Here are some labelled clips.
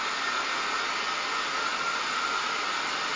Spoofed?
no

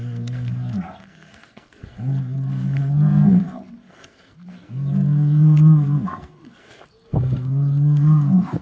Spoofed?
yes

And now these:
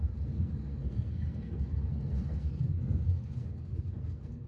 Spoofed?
yes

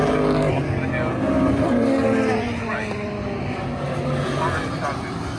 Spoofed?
no